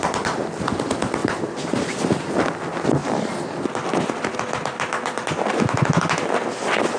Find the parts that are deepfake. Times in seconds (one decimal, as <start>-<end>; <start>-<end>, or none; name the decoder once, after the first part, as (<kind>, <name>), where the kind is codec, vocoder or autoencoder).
1.2-2.3 (vocoder, BigVGAN v2)